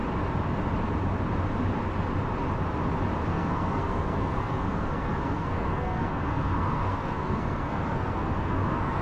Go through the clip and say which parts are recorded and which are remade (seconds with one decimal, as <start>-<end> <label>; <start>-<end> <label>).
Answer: 0.0-3.3 recorded; 3.3-9.0 remade